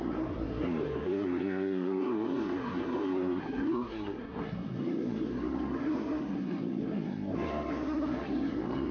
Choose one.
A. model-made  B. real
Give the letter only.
A